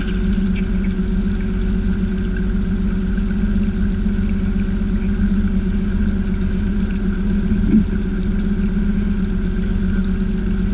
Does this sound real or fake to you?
real